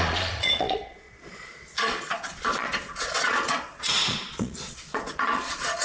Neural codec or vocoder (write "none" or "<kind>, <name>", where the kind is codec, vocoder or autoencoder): vocoder, Vocos